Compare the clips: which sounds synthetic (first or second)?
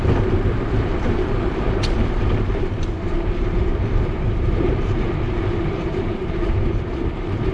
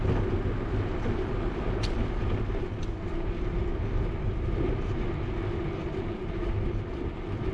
first